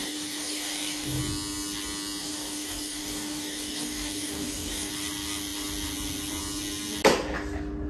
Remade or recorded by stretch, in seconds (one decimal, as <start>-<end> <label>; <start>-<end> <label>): 0.0-1.2 remade; 1.2-2.2 recorded; 2.2-4.9 remade; 4.9-7.9 recorded